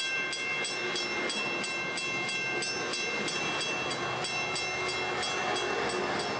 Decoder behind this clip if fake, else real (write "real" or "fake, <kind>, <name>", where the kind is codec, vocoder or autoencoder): real